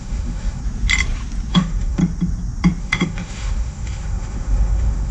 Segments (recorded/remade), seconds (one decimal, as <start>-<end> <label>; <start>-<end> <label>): 0.0-0.6 remade; 0.6-1.5 recorded; 1.5-2.0 remade; 2.0-2.8 recorded; 2.8-5.1 remade